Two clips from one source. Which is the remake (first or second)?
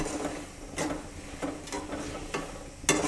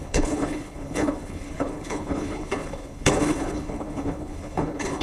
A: second